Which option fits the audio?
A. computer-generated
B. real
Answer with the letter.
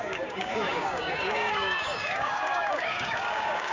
A